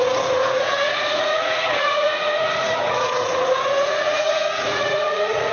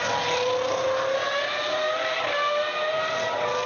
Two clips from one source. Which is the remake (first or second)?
first